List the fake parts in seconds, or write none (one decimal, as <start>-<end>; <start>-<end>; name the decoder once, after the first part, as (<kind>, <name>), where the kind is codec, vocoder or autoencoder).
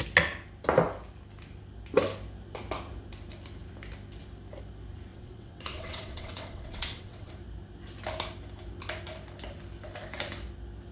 5.1-7.3 (vocoder, WaveNeXt)